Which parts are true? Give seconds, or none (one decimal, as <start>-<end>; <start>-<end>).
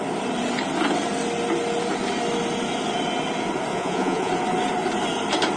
0.0-3.7; 4.3-5.6